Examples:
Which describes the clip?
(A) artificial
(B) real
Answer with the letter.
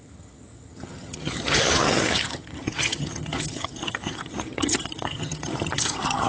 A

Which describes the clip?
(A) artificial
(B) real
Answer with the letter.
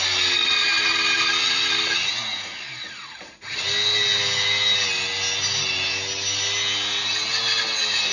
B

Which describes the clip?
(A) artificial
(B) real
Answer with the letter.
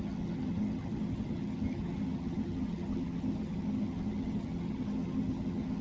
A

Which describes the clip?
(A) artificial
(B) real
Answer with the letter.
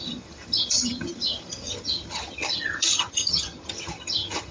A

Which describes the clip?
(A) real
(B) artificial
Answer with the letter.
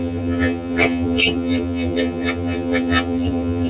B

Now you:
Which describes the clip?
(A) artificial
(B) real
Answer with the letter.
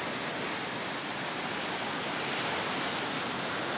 B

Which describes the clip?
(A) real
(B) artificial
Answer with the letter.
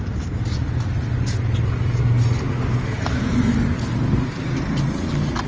A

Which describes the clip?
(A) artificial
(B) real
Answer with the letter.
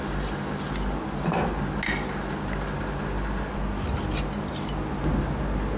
B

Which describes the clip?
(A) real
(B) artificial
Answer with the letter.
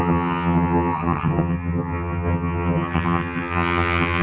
B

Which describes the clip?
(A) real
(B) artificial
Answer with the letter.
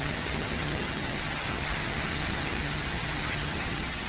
B